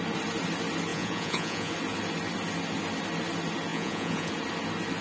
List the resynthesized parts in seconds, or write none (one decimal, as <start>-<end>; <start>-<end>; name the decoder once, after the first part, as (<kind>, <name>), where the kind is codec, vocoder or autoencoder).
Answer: 0.9-1.7 (vocoder, Vocos); 3.7-4.3